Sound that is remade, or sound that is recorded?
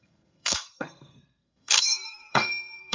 remade